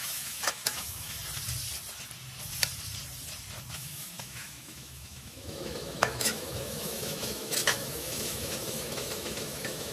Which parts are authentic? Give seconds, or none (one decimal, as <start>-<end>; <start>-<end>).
1.2-3.7